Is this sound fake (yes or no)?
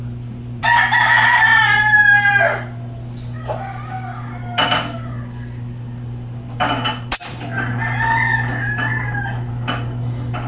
yes